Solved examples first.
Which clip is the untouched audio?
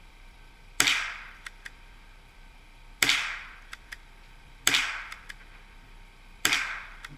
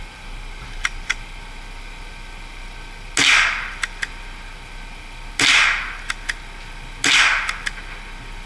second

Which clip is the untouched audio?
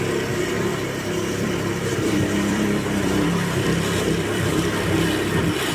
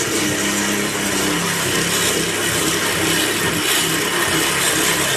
second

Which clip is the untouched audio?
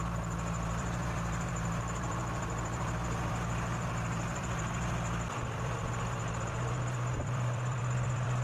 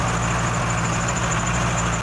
second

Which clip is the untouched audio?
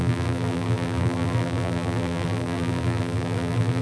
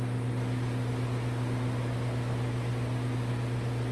second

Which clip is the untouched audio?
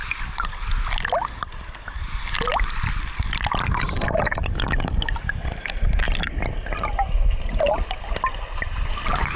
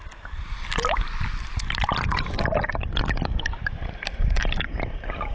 first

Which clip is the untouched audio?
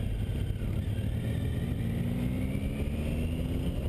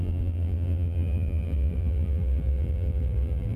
first